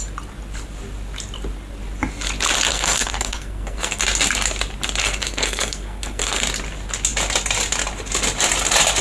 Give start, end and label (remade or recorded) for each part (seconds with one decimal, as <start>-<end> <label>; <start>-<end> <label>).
0.0-2.7 recorded; 2.7-4.0 remade; 4.0-5.0 recorded; 5.0-6.4 remade; 6.4-9.0 recorded